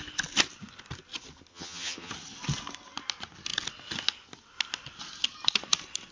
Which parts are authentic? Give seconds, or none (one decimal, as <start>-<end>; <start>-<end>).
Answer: 0.0-1.5; 2.1-6.1